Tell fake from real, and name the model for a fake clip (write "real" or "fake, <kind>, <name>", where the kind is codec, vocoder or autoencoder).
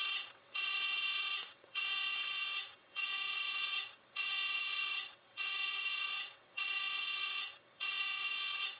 fake, vocoder, WaveNeXt